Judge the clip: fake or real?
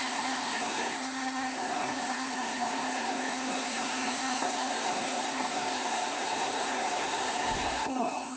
fake